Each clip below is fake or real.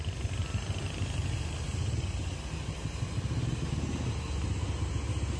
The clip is real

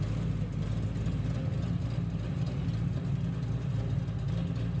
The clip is real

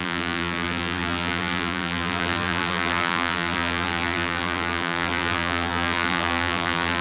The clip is fake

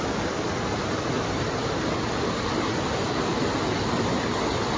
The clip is real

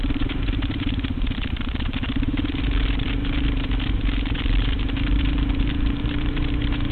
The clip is fake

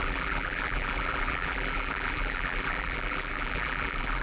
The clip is fake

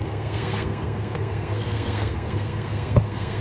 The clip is fake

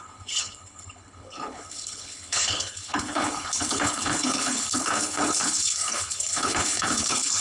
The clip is fake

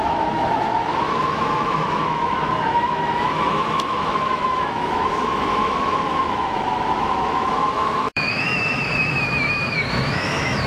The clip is fake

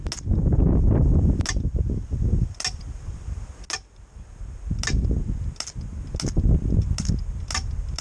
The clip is real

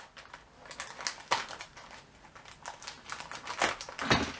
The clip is real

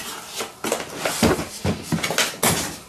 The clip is real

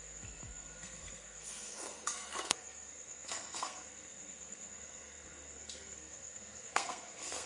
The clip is fake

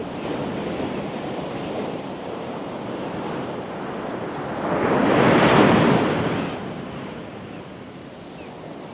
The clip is real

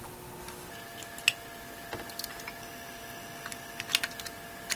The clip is real